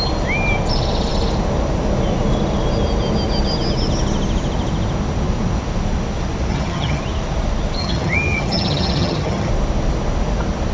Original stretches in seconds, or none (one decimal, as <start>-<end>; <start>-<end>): 0.0-6.5; 7.0-7.8; 9.5-10.7